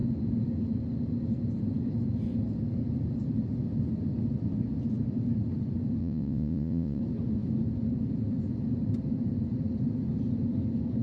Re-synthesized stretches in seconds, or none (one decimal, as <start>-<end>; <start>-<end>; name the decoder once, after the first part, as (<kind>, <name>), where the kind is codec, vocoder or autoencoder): 6.0-7.0 (vocoder, Vocos)